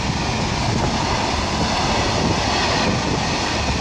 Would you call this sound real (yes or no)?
yes